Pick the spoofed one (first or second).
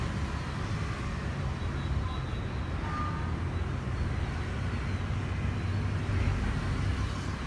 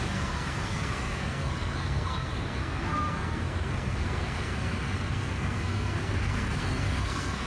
second